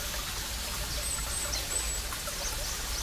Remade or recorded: recorded